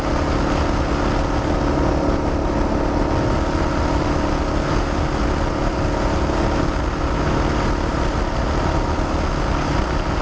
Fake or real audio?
real